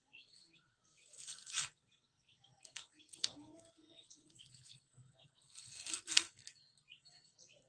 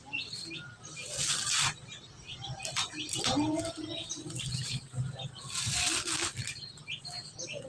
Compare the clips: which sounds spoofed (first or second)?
first